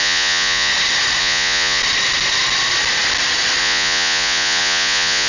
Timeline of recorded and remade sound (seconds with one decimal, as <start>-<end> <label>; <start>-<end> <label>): 0.0-0.7 remade; 0.7-1.2 recorded; 1.2-1.8 remade; 1.8-3.6 recorded; 3.6-5.3 remade